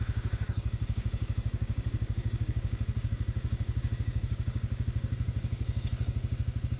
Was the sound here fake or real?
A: fake